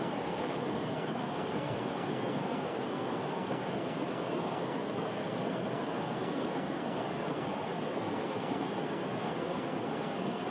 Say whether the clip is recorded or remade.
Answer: remade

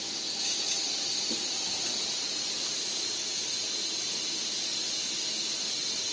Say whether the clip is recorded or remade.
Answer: recorded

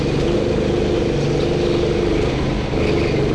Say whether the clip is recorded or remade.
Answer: recorded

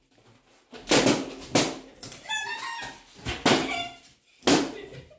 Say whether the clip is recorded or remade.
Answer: recorded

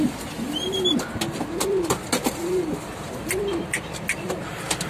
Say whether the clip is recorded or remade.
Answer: recorded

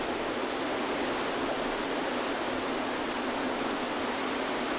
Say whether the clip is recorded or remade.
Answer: recorded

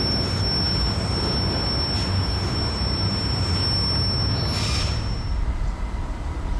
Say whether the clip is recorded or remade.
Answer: recorded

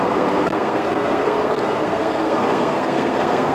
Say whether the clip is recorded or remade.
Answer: remade